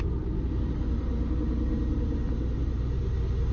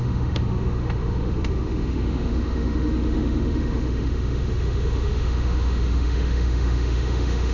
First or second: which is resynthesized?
second